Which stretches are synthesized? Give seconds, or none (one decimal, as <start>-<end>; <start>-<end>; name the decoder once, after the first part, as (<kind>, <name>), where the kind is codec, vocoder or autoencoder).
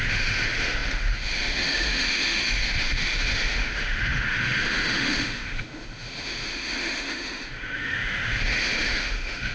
0.0-9.5 (autoencoder, DAC-VAE)